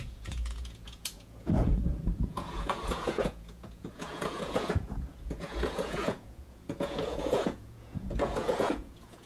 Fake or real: fake